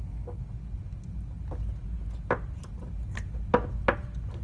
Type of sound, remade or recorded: recorded